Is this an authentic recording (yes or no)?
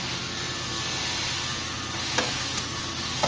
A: yes